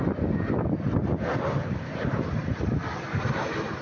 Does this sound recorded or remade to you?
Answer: recorded